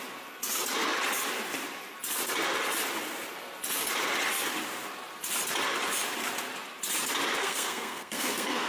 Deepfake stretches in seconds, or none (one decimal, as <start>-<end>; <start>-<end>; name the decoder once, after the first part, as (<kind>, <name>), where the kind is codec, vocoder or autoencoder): 7.4-8.7 (codec, SNAC)